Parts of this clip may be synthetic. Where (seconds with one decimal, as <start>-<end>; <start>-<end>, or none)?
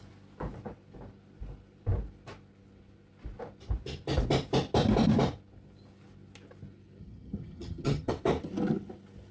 7.0-8.1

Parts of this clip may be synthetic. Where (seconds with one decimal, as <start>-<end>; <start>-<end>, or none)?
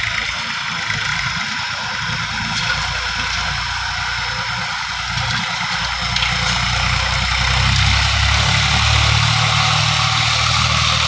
1.1-2.0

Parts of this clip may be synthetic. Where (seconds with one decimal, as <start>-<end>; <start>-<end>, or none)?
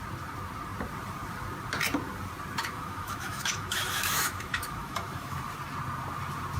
2.6-5.4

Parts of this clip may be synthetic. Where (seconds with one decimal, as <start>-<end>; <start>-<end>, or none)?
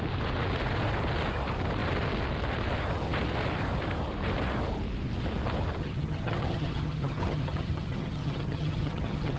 5.8-9.4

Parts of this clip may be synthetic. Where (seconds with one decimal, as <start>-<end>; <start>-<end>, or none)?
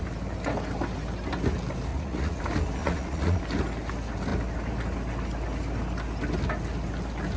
1.9-2.4; 2.8-3.4